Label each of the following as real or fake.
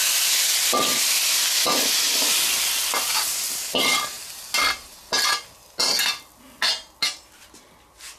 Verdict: real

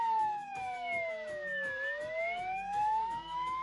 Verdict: fake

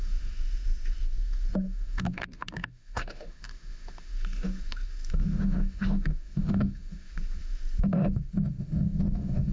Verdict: fake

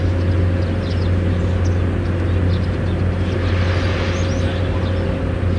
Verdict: real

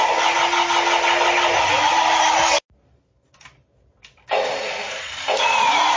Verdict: real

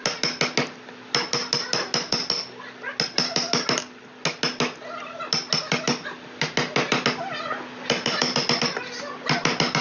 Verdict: real